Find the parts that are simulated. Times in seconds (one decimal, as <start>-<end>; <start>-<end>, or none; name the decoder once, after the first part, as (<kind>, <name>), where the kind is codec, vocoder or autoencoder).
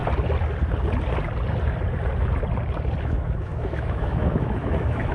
3.0-5.1 (autoencoder, DAC-VAE)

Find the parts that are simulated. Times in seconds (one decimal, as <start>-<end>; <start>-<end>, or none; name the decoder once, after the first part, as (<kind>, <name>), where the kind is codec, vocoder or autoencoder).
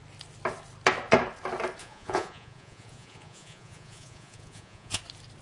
1.8-5.0 (vocoder, Vocos)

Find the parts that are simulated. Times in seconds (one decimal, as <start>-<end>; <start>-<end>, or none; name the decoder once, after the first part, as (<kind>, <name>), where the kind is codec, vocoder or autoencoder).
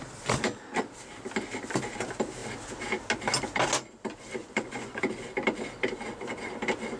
4.4-5.1 (vocoder, Vocos)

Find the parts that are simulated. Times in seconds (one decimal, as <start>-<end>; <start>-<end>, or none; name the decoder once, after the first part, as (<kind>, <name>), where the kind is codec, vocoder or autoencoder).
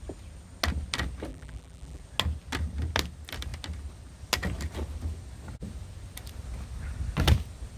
1.3-2.0 (vocoder, BigVGAN v2)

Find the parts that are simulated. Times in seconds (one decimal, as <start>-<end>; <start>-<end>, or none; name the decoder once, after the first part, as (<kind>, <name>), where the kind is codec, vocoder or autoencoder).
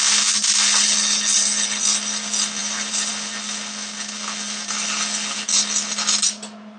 2.6-3.1 (vocoder, BigVGAN v2)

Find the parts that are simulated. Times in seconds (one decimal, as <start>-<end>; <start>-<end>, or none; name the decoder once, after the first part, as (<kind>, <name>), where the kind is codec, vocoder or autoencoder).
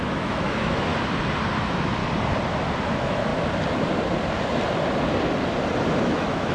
0.0-0.9 (autoencoder, DAC-VAE); 1.6-2.0; 2.9-3.3; 6.0-6.5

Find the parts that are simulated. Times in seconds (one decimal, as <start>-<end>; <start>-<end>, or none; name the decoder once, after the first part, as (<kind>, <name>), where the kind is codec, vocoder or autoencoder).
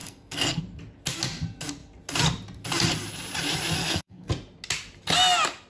0.0-0.6 (codec, SNAC); 3.8-4.3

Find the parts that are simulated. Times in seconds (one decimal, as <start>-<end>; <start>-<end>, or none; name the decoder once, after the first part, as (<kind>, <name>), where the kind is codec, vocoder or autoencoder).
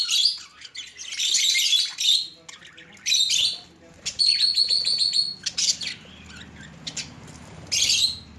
none